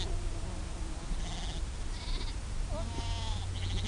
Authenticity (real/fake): real